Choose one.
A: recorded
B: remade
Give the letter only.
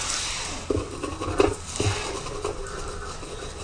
A